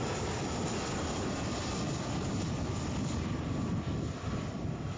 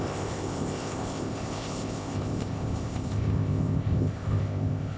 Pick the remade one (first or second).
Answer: second